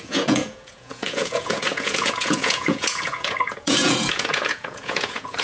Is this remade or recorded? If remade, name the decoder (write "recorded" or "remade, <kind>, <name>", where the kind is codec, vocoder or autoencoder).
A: remade, vocoder, Vocos